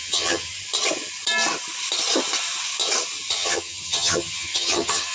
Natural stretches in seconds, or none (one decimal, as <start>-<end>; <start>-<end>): 0.5-3.3